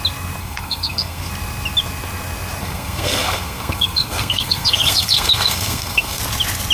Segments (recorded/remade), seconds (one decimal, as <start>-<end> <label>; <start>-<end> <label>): 0.0-0.4 recorded; 0.4-1.3 remade; 1.3-2.6 recorded; 2.6-6.2 remade; 6.2-6.7 recorded